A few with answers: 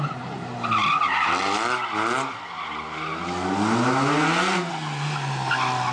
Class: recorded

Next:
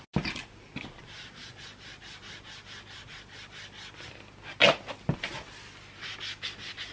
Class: recorded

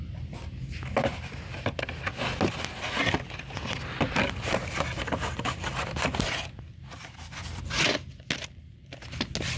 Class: recorded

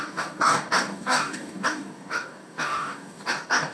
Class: remade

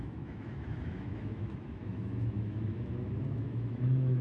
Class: remade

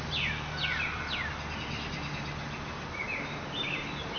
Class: recorded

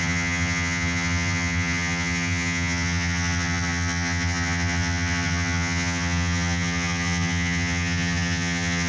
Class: remade